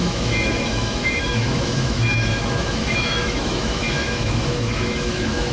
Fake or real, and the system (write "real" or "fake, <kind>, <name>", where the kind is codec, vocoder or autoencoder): fake, autoencoder, DAC-VAE